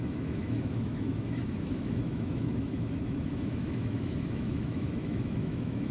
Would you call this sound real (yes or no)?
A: no